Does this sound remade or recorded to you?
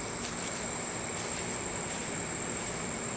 recorded